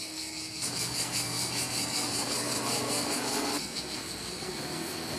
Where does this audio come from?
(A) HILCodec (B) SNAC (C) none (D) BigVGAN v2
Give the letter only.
B